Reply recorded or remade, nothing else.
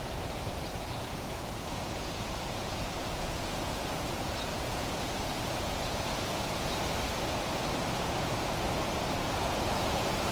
remade